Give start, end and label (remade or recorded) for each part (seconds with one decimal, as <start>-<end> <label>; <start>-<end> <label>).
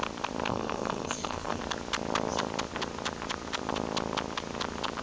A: 0.0-0.5 recorded; 0.5-1.6 remade; 1.6-5.0 recorded